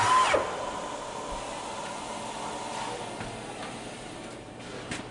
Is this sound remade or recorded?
recorded